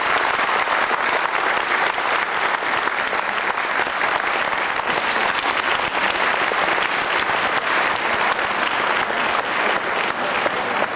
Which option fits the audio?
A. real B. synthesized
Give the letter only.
A